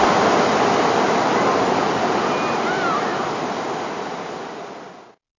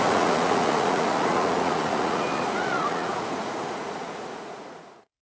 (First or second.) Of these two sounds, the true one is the first